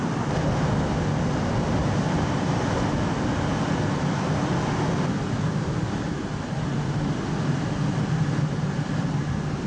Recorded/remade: recorded